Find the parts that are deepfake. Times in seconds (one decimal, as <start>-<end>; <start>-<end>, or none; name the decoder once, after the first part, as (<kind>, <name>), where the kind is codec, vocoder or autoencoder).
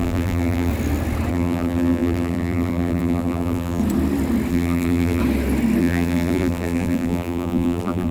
0.0-0.7 (vocoder, BigVGAN v2); 1.3-3.8; 4.5-5.2; 5.8-8.1